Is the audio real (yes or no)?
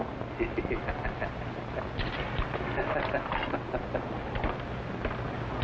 yes